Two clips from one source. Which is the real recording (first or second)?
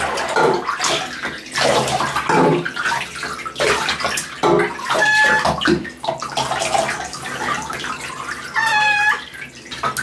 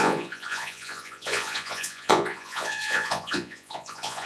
first